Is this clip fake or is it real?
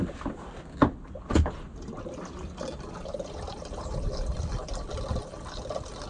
real